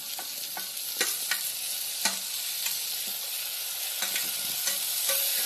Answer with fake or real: real